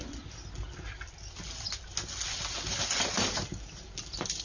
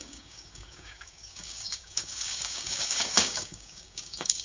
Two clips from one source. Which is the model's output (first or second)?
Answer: second